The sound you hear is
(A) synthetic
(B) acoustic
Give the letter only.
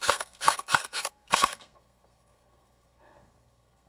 A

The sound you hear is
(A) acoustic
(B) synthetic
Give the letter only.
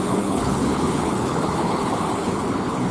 B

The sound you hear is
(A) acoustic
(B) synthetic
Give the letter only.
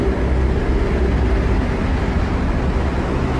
A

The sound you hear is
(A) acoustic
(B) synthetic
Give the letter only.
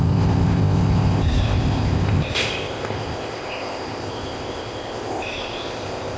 B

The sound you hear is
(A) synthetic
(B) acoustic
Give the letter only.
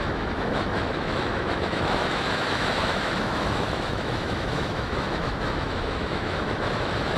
A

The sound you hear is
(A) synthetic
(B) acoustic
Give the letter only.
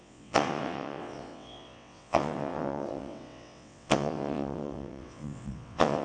A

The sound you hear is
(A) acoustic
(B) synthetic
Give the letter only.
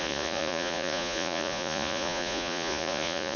B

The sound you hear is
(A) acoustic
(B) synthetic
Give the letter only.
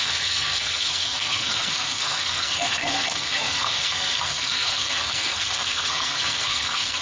B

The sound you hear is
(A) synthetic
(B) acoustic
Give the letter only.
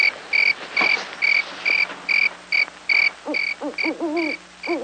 B